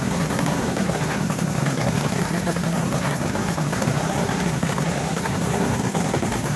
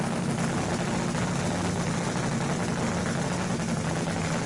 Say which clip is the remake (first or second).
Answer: first